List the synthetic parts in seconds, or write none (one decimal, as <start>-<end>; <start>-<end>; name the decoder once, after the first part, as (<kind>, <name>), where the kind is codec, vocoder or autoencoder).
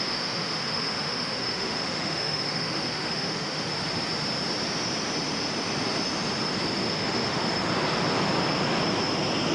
0.0-3.7 (autoencoder, DAC-VAE); 6.9-7.4